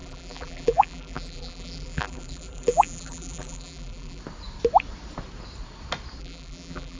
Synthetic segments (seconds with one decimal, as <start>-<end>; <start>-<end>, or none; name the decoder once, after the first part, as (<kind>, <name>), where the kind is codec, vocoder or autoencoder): 0.0-4.2 (vocoder, BigVGAN v2); 6.2-7.0